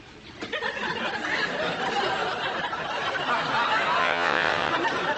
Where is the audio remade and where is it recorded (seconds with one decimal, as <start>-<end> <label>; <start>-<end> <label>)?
0.0-4.0 recorded; 4.0-4.7 remade; 4.7-5.2 recorded